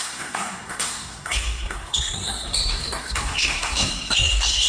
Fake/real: fake